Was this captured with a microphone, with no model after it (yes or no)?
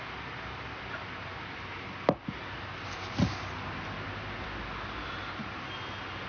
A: yes